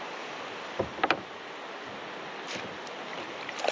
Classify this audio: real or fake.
real